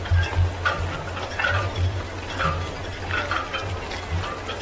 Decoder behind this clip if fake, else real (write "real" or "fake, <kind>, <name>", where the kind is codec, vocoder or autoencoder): real